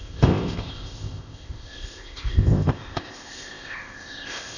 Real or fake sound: fake